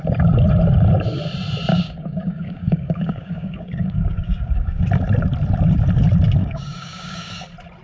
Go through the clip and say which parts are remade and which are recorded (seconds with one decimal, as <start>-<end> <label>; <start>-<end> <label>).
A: 0.0-1.7 recorded; 1.7-4.8 remade; 4.8-6.4 recorded; 6.4-7.3 remade; 7.3-7.8 recorded